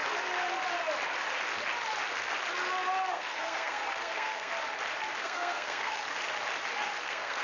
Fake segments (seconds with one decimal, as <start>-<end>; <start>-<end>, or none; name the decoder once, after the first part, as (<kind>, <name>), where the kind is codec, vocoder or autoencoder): 3.1-4.5 (codec, SNAC); 5.2-6.1; 7.0-7.4